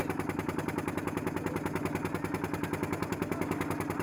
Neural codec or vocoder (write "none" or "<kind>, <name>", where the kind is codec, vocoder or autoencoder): none